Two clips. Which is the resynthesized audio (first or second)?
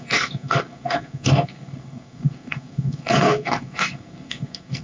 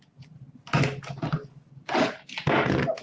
first